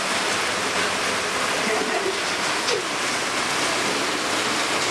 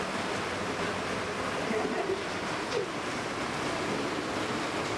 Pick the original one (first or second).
first